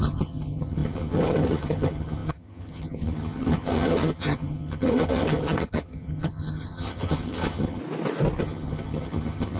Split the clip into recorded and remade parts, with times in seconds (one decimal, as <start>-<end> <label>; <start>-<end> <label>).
0.0-7.8 remade; 7.8-8.4 recorded; 8.4-9.6 remade